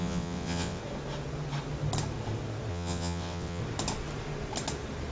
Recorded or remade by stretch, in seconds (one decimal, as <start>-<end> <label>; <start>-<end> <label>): 0.0-0.8 remade; 0.8-2.7 recorded; 2.7-3.6 remade; 3.6-5.1 recorded